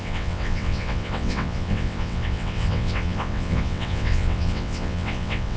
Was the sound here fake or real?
fake